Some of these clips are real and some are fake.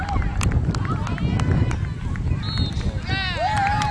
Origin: real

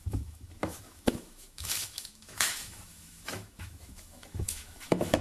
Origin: fake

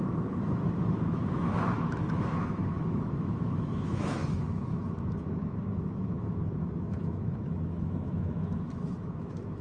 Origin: fake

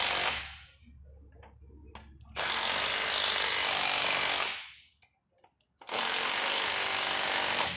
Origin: real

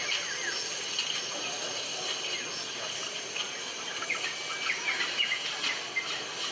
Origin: real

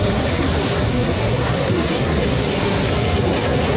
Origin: fake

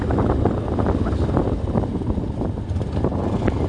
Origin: real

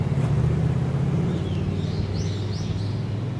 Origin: real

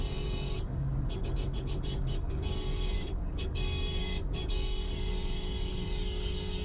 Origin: fake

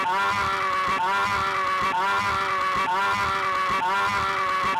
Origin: real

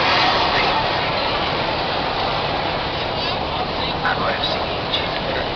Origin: fake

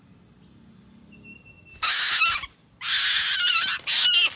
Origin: real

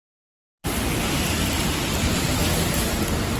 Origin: real